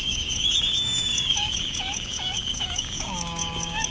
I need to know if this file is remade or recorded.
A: remade